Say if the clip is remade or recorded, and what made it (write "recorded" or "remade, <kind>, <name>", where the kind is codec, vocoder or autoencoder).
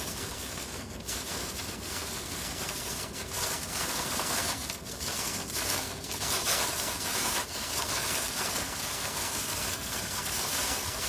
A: remade, codec, SNAC